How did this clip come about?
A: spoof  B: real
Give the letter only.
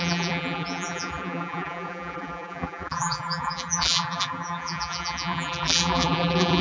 A